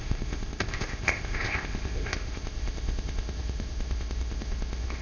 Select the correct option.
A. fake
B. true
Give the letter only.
A